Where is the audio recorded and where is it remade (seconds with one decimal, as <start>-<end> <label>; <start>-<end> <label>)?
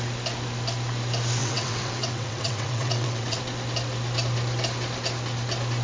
0.0-1.4 recorded; 1.4-3.4 remade; 3.4-5.8 recorded